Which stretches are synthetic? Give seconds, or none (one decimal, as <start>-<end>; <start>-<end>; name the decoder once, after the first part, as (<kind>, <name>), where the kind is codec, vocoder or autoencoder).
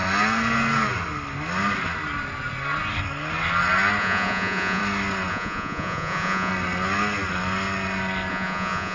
4.0-4.8 (vocoder, Vocos); 5.3-6.5; 8.3-8.9